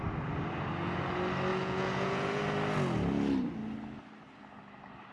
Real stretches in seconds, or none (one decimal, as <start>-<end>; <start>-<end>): 0.0-1.5; 2.4-5.1